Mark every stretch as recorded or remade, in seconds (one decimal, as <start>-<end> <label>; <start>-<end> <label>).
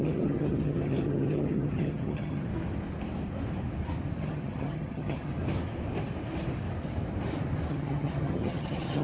0.0-2.5 remade; 2.5-4.2 recorded; 4.2-5.3 remade; 5.3-7.7 recorded; 7.7-9.0 remade